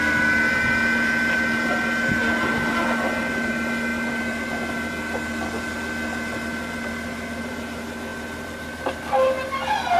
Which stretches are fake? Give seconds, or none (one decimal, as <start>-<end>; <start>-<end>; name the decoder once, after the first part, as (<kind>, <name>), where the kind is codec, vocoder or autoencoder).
0.0-8.1 (vocoder, BigVGAN v2)